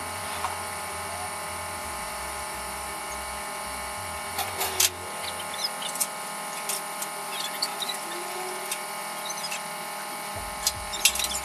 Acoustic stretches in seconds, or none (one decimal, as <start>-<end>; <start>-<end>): 0.0-1.8; 3.0-7.7; 8.5-11.4